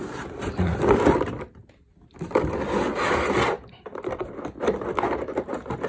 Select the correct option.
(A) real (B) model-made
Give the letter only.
A